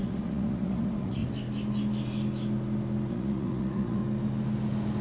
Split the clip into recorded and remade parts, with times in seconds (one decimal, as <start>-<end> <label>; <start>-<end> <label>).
0.0-1.2 remade; 1.2-3.1 recorded; 3.1-4.0 remade; 4.0-5.0 recorded